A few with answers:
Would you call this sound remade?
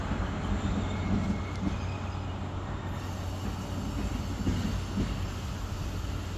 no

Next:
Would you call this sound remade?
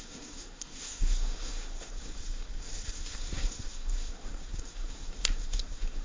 yes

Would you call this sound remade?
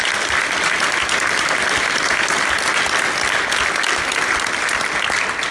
no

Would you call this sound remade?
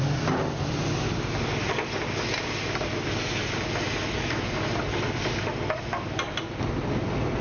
no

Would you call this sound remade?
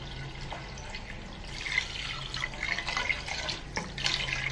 no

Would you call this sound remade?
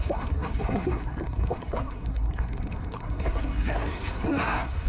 yes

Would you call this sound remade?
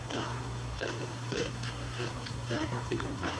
yes